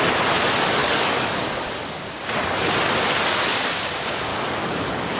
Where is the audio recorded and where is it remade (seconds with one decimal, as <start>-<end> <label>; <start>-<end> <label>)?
0.0-0.8 recorded; 0.8-1.6 remade; 1.6-4.3 recorded; 4.3-5.2 remade